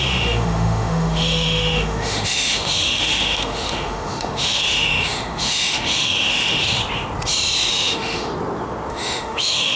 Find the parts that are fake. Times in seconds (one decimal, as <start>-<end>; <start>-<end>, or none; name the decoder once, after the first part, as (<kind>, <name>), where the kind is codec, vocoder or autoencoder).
0.0-6.8 (autoencoder, DAC-VAE); 7.7-8.3; 8.9-9.8